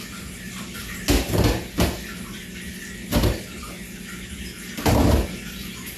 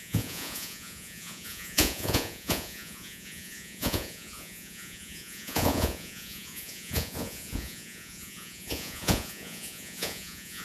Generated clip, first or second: second